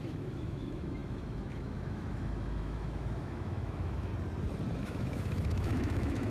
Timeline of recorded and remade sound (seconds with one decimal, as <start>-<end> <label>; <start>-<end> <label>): 0.0-4.1 remade; 4.1-4.8 recorded; 4.8-6.3 remade